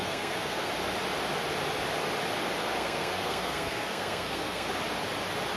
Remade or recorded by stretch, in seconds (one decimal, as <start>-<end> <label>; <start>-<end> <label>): 0.0-0.7 remade; 0.7-2.7 recorded; 2.7-4.7 remade; 4.7-5.6 recorded